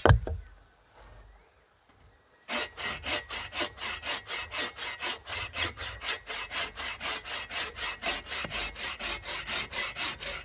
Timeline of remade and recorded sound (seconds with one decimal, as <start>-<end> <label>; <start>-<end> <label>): 0.0-5.3 recorded; 5.3-6.0 remade; 6.0-10.4 recorded

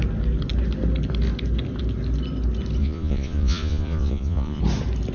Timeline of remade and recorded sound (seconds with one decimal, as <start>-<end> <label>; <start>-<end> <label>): 0.0-2.8 recorded; 2.8-4.6 remade; 4.6-5.1 recorded

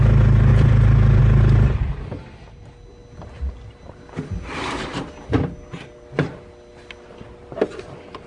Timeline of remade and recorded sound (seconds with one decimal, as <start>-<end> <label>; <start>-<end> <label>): 0.0-0.5 recorded; 0.5-1.2 remade; 1.2-3.0 recorded; 3.0-8.3 remade